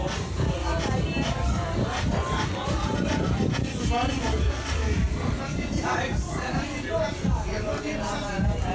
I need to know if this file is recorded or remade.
recorded